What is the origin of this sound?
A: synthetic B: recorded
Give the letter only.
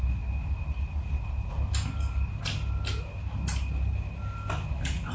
B